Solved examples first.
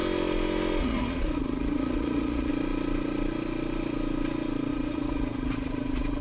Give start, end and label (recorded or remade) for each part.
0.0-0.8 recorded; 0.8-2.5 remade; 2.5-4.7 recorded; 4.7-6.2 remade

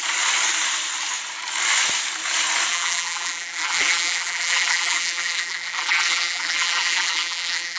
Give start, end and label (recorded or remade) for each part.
0.0-2.7 recorded; 2.7-7.8 remade